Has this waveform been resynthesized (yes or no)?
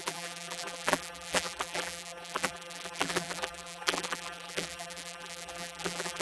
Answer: yes